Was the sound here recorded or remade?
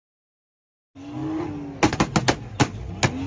recorded